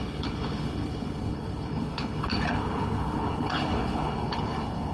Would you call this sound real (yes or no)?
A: no